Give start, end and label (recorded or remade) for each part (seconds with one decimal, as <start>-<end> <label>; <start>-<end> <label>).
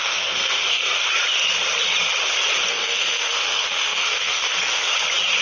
0.0-1.0 remade; 1.0-2.7 recorded; 2.7-4.9 remade; 4.9-5.4 recorded